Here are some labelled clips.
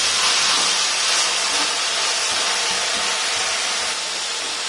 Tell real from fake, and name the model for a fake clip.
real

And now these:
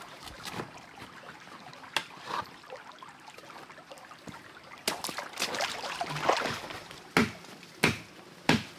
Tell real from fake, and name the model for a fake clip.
real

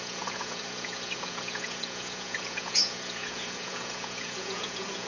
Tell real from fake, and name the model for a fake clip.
fake, vocoder, Vocos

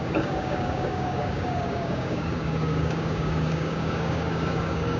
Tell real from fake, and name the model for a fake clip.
fake, codec, DAC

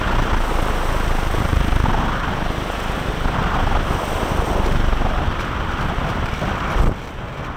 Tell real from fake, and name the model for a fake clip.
real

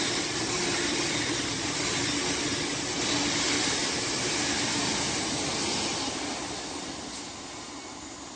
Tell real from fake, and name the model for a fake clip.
real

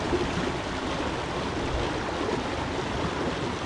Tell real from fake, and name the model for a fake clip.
real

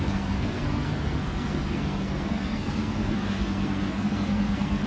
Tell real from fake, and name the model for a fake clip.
fake, codec, SNAC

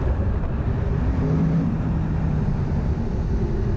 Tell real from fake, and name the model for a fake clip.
real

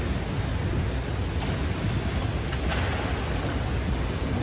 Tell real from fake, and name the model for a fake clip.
real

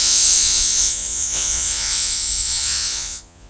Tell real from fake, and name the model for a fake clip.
fake, vocoder, Vocos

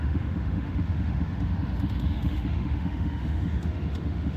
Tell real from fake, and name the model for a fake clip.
fake, autoencoder, DAC-VAE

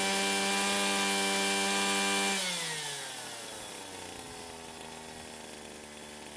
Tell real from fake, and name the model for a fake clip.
real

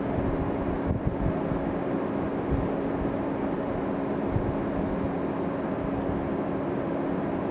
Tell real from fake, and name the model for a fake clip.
real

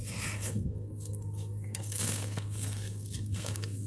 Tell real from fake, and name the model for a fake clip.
fake, codec, SNAC